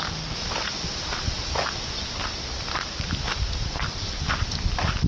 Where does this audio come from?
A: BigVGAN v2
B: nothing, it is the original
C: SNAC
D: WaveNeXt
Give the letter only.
A